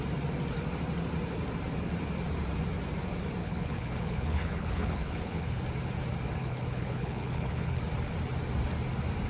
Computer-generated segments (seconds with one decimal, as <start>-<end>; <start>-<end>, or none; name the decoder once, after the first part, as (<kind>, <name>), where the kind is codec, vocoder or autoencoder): 3.4-5.6 (codec, HILCodec); 6.4-7.8